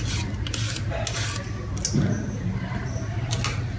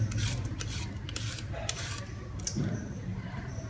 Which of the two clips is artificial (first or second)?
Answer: second